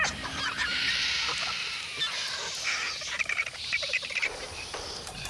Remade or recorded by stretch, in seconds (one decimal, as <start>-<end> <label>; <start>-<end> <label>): 0.0-1.9 remade; 1.9-3.2 recorded; 3.2-5.3 remade